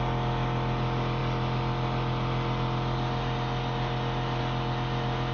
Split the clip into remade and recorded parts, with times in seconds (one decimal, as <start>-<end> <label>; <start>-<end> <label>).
0.0-5.3 recorded